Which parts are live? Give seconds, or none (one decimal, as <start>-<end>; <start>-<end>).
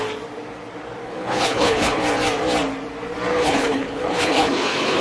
0.0-1.0; 2.0-3.3